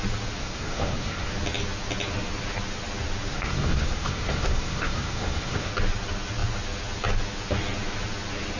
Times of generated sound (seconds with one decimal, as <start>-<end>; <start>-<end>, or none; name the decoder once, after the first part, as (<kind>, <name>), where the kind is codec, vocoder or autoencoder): 0.4-1.3 (codec, SNAC); 3.3-5.7

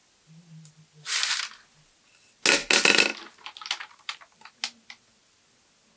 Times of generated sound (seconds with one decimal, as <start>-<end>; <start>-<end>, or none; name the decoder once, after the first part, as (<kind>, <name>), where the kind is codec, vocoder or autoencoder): none

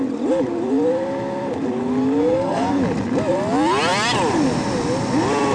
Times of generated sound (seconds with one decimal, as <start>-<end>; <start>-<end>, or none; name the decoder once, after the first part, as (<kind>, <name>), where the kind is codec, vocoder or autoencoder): 2.2-2.7 (codec, SNAC)

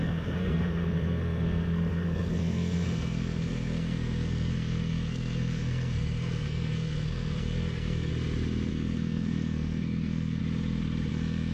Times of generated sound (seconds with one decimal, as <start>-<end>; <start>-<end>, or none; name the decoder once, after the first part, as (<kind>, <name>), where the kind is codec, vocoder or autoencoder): 0.0-8.1 (codec, SNAC); 8.7-10.4; 11.1-11.5